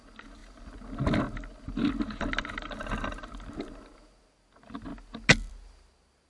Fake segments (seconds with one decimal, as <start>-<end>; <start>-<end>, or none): none